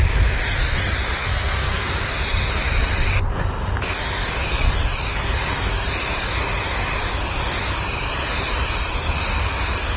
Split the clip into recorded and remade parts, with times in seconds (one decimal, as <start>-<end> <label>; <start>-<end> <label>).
0.0-1.2 recorded; 1.2-1.9 remade; 1.9-10.0 recorded